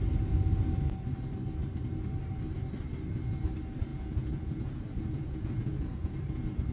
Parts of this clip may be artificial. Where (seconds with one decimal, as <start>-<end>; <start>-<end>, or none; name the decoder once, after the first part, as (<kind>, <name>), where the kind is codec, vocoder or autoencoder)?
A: 3.9-6.2 (vocoder, Vocos)